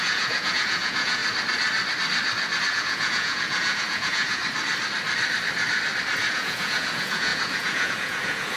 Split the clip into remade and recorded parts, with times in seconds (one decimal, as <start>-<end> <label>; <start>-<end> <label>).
0.0-1.2 remade; 1.2-2.7 recorded; 2.7-4.4 remade; 4.4-6.3 recorded; 6.3-8.6 remade